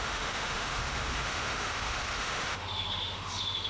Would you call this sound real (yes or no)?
no